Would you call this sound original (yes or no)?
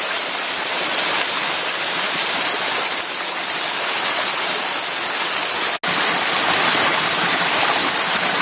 yes